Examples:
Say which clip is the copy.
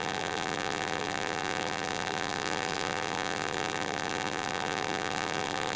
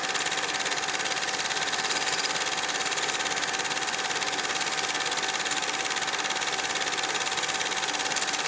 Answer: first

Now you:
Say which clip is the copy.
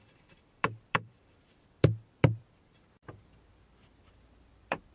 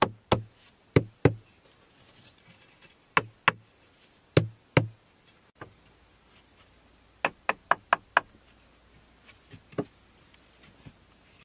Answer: first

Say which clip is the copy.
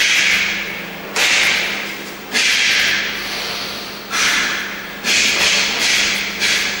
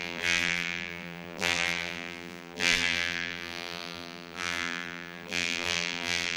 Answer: second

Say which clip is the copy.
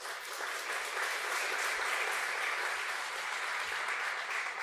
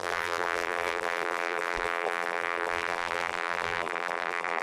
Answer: second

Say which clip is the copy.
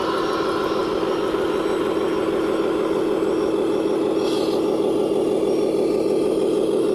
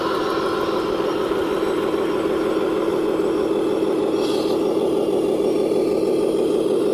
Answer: second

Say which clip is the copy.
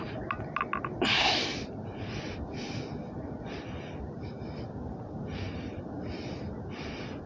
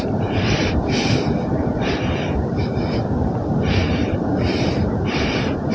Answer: second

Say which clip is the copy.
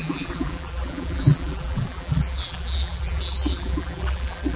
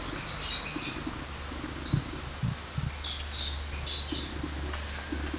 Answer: first